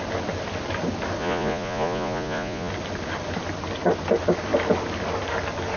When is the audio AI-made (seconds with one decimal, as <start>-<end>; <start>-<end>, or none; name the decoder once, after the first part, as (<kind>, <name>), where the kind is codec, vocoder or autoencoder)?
1.2-2.7 (vocoder, Vocos)